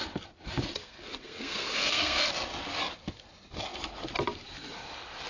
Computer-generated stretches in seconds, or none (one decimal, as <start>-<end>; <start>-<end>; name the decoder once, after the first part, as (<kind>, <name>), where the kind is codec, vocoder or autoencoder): 0.8-2.3 (codec, SNAC)

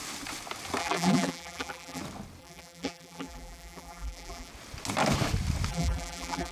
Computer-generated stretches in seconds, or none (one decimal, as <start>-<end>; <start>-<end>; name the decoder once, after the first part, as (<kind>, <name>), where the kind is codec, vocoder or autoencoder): 0.8-2.0 (vocoder, BigVGAN v2); 2.4-4.5; 5.7-6.5

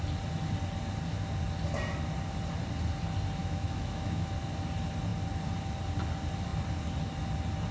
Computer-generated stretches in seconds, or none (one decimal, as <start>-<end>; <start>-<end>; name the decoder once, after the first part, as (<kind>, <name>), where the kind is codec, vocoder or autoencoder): 3.4-4.3 (autoencoder, DAC-VAE)

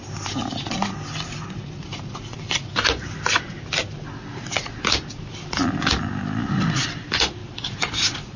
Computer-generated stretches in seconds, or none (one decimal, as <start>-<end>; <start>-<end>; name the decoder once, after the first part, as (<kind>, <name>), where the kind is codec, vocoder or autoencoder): none

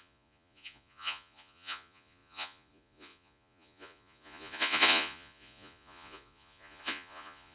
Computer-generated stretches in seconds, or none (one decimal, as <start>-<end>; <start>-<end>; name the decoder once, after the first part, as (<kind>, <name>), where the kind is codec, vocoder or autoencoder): 0.0-7.5 (vocoder, Vocos)